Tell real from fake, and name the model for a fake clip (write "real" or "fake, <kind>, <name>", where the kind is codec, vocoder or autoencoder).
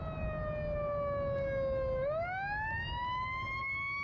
real